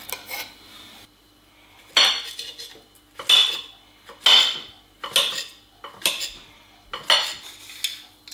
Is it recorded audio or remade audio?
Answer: recorded